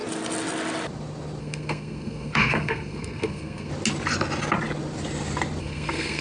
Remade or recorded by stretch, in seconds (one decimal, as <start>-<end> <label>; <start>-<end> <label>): 0.0-1.4 recorded; 1.4-3.7 remade; 3.7-5.6 recorded; 5.6-6.2 remade